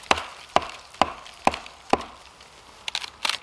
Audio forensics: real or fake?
real